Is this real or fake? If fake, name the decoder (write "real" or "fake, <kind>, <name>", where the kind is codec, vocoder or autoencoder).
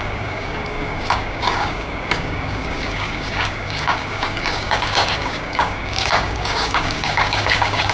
fake, codec, DAC